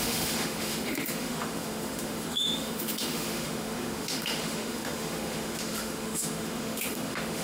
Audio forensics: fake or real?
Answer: fake